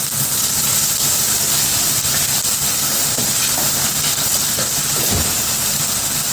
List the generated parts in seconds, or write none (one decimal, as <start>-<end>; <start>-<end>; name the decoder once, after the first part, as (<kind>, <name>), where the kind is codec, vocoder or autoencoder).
0.0-3.8 (vocoder, BigVGAN v2)